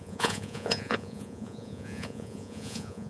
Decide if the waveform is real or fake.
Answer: fake